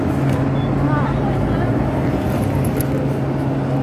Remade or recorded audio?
recorded